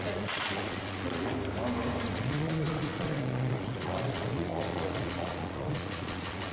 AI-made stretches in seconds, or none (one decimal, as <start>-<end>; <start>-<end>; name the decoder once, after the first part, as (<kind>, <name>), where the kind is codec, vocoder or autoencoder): 0.0-1.3 (vocoder, Vocos); 2.1-6.5